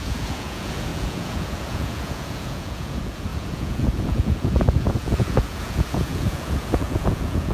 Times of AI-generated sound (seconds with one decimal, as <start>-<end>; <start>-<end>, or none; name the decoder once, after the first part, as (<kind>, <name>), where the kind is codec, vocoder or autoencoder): 0.0-7.5 (vocoder, Vocos)